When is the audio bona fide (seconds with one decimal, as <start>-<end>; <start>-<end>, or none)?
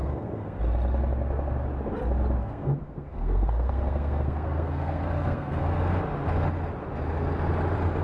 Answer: 0.6-2.4; 5.6-8.0